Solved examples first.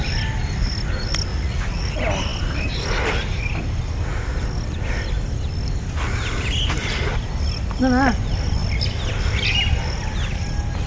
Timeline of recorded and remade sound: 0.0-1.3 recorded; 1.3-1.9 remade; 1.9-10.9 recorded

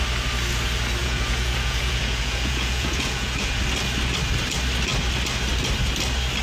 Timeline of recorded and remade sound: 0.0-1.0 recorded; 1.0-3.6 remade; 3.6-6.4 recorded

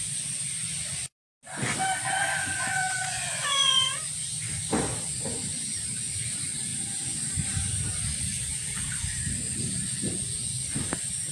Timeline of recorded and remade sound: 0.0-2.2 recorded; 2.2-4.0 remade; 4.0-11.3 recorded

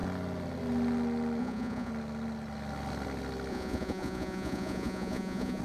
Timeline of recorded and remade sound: 0.0-1.4 recorded; 1.4-1.9 remade; 1.9-3.5 recorded; 3.5-5.6 remade